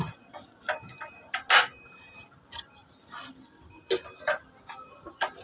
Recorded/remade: recorded